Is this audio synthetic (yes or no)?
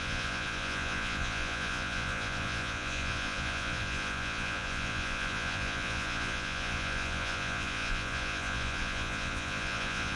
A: yes